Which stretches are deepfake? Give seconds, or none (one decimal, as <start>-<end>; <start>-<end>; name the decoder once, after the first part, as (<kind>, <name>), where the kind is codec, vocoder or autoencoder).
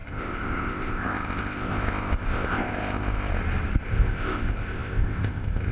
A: 0.0-3.3 (codec, ZipCodec); 3.8-5.7